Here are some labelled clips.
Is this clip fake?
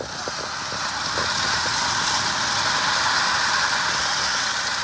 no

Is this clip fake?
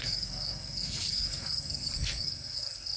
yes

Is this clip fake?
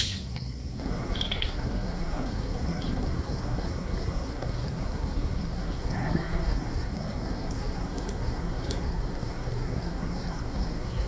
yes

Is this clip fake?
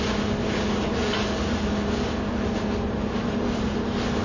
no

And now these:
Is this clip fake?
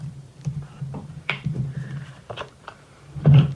yes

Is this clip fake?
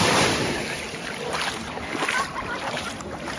yes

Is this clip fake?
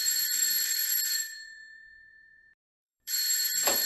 yes